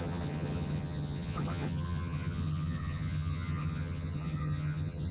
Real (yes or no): no